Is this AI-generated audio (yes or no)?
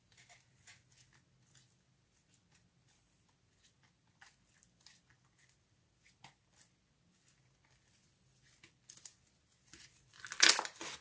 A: no